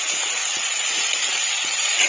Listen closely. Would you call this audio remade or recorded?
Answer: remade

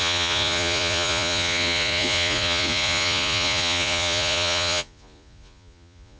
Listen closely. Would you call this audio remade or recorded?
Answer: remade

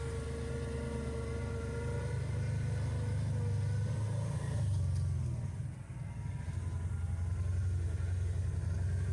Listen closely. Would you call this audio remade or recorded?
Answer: recorded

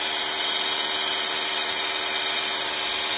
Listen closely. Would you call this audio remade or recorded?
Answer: recorded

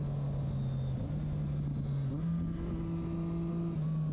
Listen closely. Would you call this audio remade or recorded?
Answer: recorded